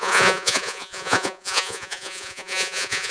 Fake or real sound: fake